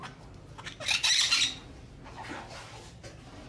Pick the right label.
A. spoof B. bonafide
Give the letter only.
B